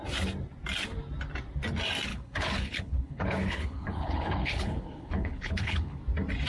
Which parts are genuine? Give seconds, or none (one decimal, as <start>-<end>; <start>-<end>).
0.0-2.1; 6.0-6.5